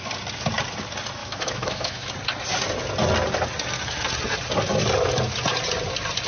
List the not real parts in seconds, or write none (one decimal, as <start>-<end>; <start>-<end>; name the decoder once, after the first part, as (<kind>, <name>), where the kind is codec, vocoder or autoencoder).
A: 1.2-2.1 (autoencoder, DAC-VAE)